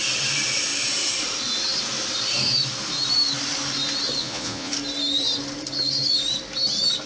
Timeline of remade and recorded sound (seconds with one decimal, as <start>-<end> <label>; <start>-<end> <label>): 0.0-4.2 recorded; 4.2-4.7 remade; 4.7-7.1 recorded